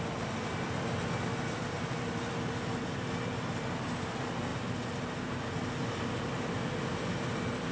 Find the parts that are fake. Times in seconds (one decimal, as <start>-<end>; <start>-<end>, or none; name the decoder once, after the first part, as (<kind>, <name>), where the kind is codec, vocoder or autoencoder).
none